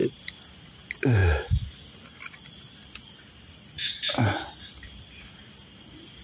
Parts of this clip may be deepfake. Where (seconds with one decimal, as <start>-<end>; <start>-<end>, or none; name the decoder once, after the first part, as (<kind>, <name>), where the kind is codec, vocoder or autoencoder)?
none